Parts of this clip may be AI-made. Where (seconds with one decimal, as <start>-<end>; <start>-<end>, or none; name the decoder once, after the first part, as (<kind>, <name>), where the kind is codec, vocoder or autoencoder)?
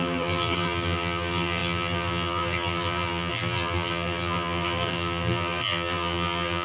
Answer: 0.0-6.6 (vocoder, BigVGAN v2)